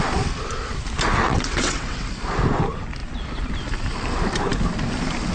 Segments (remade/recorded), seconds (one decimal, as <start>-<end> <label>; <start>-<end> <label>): 0.0-1.2 recorded; 1.2-2.1 remade; 2.1-5.3 recorded